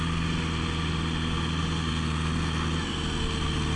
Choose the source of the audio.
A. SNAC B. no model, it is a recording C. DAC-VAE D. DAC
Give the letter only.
B